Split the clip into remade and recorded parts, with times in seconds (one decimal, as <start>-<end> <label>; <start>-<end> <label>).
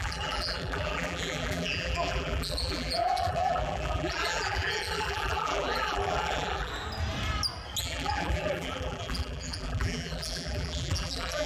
0.0-6.7 remade; 6.7-7.8 recorded; 7.8-11.5 remade